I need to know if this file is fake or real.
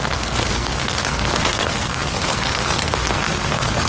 fake